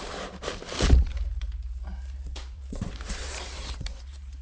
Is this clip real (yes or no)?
no